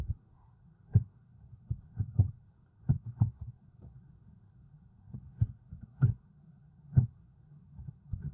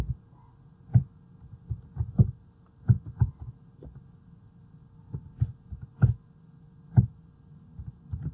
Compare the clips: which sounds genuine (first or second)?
second